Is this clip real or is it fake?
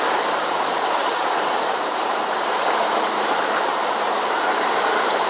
fake